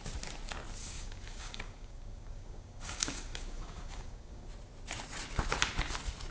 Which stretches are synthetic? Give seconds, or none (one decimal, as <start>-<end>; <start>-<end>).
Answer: 0.8-4.5